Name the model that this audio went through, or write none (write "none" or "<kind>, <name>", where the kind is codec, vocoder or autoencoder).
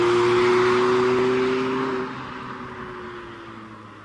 none